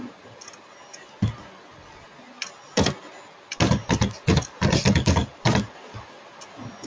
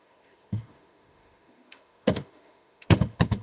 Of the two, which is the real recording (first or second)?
first